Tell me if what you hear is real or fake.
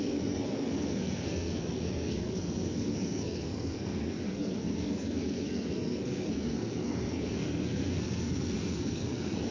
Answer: fake